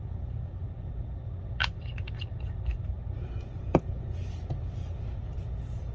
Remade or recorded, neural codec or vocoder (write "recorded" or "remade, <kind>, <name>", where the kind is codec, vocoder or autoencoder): recorded